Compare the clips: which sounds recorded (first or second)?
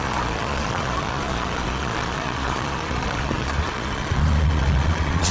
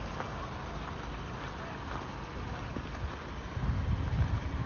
second